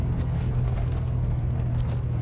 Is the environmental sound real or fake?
fake